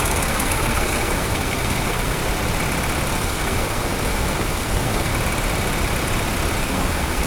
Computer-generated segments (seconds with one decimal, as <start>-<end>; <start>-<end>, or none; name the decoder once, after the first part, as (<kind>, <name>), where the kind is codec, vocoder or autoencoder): 0.0-2.2 (codec, SNAC); 3.1-5.1; 6.6-7.3